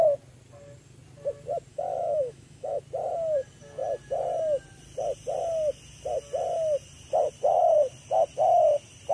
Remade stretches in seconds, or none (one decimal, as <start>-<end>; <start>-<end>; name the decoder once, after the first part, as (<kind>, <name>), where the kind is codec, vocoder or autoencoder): 1.7-2.8 (autoencoder, DAC-VAE)